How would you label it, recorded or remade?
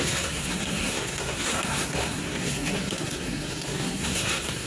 remade